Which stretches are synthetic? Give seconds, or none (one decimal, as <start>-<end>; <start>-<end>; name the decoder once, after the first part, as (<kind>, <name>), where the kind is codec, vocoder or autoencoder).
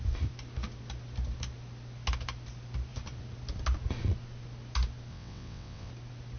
5.1-5.9 (vocoder, WaveNeXt)